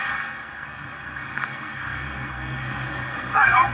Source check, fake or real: fake